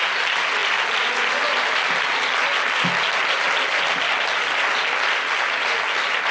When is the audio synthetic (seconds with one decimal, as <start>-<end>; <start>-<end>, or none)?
none